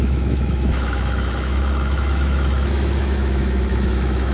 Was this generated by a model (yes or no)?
yes